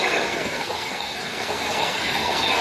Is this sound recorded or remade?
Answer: remade